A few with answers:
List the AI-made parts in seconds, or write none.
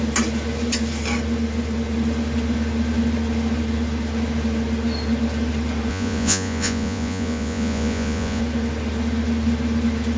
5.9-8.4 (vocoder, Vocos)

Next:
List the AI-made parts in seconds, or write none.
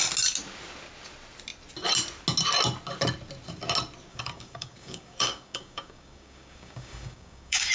4.1-7.7 (codec, DAC)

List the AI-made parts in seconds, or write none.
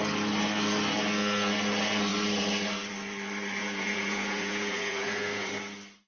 3.6-5.5 (vocoder, Vocos)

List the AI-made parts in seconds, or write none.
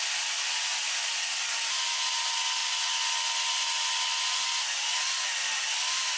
none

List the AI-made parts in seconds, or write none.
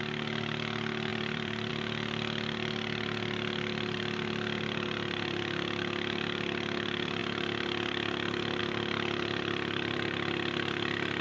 1.1-1.7 (vocoder, BigVGAN v2)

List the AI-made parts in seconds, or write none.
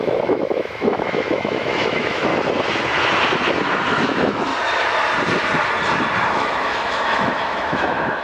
0.0-2.3 (autoencoder, DAC-VAE); 3.9-4.5; 6.3-8.2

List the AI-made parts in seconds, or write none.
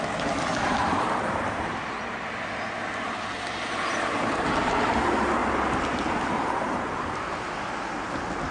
none